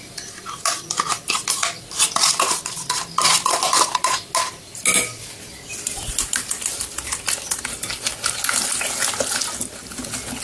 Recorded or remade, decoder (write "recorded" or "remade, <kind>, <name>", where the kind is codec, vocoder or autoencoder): recorded